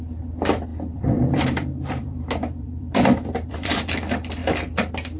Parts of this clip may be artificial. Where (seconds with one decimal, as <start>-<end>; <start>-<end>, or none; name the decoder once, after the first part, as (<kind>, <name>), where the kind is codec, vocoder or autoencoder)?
0.7-3.8 (vocoder, BigVGAN v2)

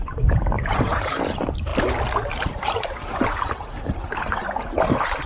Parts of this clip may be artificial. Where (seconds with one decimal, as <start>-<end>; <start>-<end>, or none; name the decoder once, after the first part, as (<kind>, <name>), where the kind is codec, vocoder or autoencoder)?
0.0-1.7 (vocoder, BigVGAN v2); 2.5-4.4